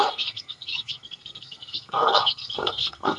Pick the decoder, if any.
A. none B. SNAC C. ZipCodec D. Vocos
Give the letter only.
B